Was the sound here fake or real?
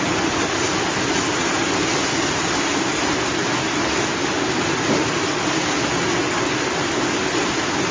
real